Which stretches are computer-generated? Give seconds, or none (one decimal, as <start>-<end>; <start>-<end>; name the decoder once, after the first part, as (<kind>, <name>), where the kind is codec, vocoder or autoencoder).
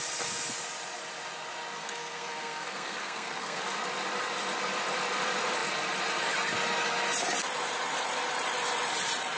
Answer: 1.8-3.6 (codec, SNAC)